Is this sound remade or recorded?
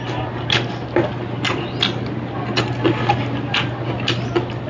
recorded